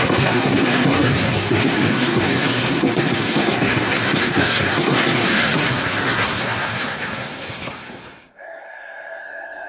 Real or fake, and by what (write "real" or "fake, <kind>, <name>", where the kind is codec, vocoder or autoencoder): fake, codec, SNAC